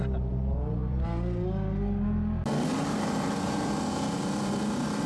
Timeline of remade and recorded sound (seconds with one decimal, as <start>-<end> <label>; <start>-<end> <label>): 0.0-5.1 recorded